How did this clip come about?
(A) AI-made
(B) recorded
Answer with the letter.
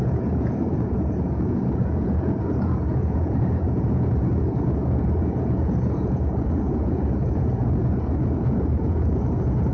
A